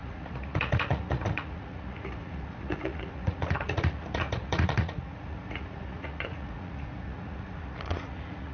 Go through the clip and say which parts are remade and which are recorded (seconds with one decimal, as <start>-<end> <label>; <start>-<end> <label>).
0.0-8.5 remade